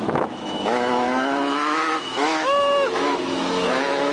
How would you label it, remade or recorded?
remade